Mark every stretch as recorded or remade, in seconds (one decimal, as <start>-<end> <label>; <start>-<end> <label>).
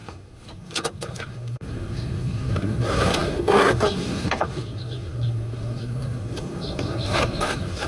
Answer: 0.0-7.9 remade